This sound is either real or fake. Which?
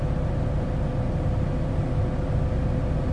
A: real